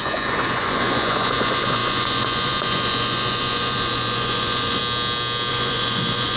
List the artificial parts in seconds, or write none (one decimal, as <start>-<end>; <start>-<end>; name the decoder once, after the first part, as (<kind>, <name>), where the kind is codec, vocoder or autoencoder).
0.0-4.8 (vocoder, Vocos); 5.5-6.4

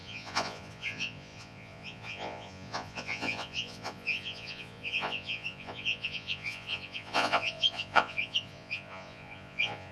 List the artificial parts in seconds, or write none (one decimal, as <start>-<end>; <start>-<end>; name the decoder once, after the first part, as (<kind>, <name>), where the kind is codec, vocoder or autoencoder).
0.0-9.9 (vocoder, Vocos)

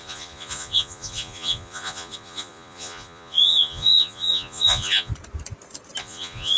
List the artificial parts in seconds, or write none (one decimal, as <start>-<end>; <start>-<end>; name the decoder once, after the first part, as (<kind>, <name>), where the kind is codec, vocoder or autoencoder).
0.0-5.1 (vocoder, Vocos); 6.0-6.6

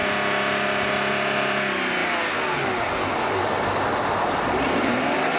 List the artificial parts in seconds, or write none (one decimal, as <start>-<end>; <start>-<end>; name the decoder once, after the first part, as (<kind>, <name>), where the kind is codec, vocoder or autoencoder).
none

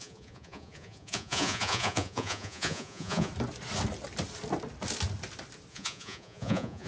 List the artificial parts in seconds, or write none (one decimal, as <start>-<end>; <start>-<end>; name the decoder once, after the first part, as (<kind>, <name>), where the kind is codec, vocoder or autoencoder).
0.0-3.3 (vocoder, Vocos); 5.7-6.9

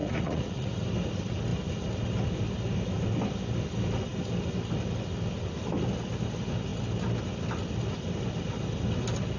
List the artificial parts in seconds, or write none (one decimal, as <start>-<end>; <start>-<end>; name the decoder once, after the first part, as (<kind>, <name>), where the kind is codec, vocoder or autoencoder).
0.0-0.7 (vocoder, Vocos)